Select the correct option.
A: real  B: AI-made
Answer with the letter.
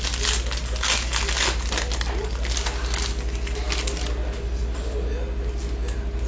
A